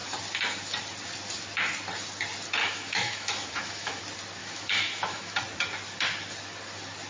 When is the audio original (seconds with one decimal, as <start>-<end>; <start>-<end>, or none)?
0.0-2.6; 4.0-4.4; 5.4-7.1